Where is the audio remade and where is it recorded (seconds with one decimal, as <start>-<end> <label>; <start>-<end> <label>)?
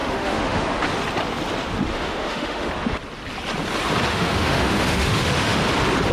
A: 0.0-0.6 remade; 0.6-1.9 recorded; 1.9-2.7 remade; 2.7-4.1 recorded; 4.1-5.6 remade; 5.6-6.1 recorded